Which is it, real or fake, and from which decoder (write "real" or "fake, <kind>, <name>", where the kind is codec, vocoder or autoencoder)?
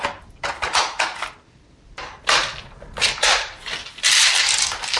real